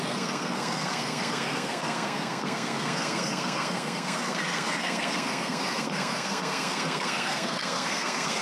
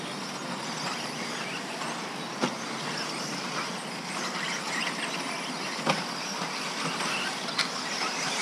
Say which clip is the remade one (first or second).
first